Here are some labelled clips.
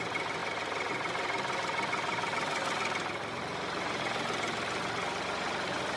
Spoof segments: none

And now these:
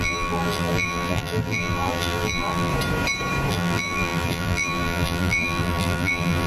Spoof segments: 0.0-2.7 (vocoder, BigVGAN v2); 3.5-6.5

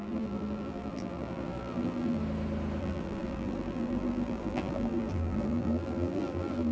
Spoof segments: 0.0-2.2 (vocoder, BigVGAN v2); 2.8-6.7

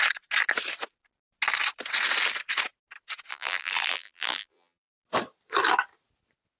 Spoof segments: 3.3-4.9 (vocoder, BigVGAN v2)

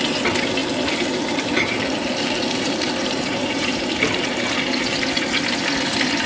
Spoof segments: 0.6-4.4 (vocoder, BigVGAN v2)

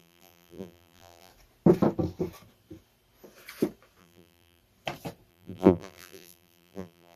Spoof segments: 0.0-1.3 (vocoder, BigVGAN v2); 4.0-4.6; 5.3-7.2

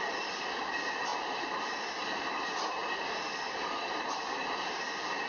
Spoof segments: none